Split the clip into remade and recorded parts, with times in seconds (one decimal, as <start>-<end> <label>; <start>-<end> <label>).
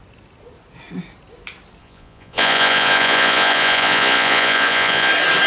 0.0-1.8 recorded; 1.8-5.1 remade; 5.1-5.5 recorded